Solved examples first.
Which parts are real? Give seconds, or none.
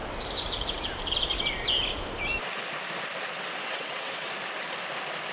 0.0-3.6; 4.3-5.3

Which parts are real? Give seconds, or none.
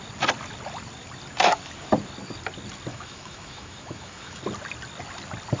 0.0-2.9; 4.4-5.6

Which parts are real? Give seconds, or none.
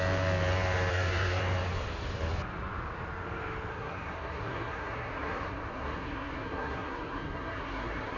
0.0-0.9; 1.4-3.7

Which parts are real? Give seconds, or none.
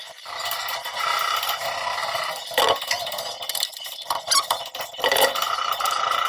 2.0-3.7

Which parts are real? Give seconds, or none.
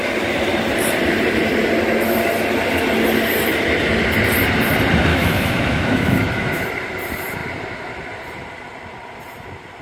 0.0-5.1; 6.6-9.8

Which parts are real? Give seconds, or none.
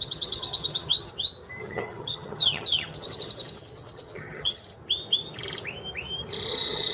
1.1-1.6; 4.6-6.5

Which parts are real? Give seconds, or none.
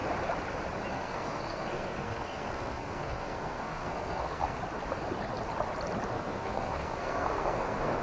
0.0-0.9; 4.6-6.1